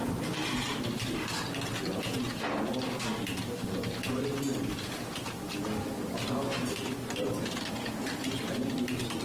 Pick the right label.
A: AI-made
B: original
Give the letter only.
B